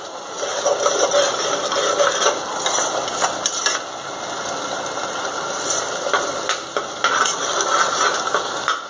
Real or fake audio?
real